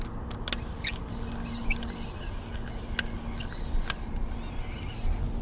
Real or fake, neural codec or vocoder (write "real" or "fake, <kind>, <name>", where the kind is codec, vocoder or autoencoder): real